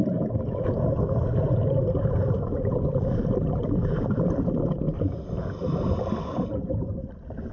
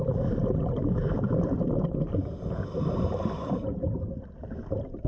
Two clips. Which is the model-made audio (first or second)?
first